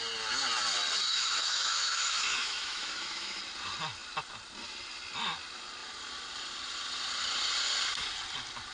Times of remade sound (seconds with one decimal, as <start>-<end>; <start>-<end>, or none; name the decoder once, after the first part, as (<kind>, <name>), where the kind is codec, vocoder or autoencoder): 1.0-3.4 (autoencoder, DAC-VAE)